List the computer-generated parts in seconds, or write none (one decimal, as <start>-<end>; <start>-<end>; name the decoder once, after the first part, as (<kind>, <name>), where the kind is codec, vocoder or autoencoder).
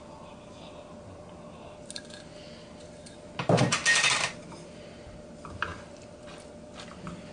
none